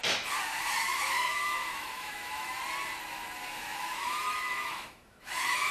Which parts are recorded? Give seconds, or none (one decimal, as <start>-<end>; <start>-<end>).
0.0-0.9; 2.5-3.5